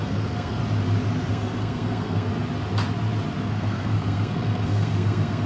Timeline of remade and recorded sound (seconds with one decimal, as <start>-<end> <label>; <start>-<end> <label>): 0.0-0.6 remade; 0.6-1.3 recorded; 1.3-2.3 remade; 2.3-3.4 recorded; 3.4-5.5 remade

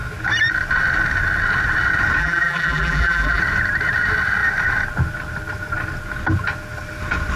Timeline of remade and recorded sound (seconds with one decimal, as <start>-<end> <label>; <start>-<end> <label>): 0.0-2.2 recorded; 2.2-3.4 remade; 3.4-7.4 recorded

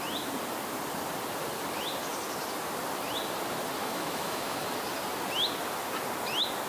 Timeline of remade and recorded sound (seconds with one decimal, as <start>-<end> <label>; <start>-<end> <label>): 0.0-3.8 recorded; 3.8-4.6 remade; 4.6-6.7 recorded

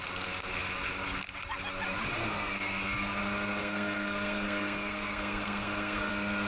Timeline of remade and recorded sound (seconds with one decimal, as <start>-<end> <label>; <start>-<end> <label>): 0.0-3.6 recorded; 3.6-6.1 remade; 6.1-6.5 recorded

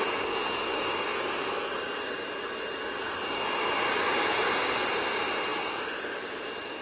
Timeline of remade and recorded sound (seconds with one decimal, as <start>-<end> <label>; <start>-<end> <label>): 0.0-6.8 recorded

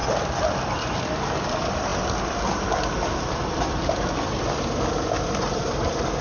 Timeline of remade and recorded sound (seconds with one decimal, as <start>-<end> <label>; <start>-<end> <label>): 0.0-6.2 remade

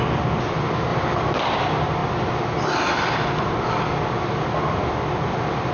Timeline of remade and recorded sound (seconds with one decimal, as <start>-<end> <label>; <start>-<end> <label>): 0.0-5.7 recorded